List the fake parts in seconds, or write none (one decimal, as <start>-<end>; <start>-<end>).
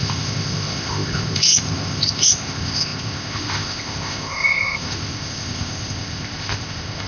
0.0-7.1